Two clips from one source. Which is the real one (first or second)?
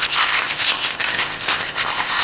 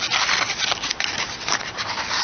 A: second